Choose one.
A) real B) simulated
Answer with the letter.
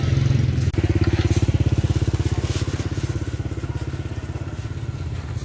A